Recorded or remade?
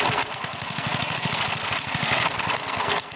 remade